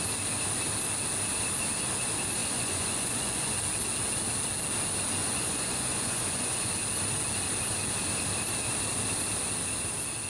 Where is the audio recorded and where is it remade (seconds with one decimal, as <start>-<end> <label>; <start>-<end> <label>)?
0.0-2.4 recorded; 2.4-3.6 remade; 3.6-5.2 recorded; 5.2-6.7 remade; 6.7-10.3 recorded